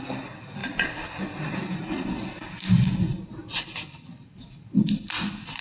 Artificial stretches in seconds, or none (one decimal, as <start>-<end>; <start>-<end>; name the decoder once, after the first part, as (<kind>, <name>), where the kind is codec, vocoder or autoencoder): 0.6-1.5 (vocoder, BigVGAN v2); 3.4-4.0